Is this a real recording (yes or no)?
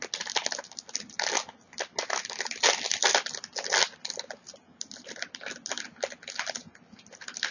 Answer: yes